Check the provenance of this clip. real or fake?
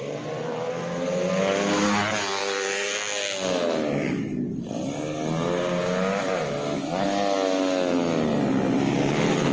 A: real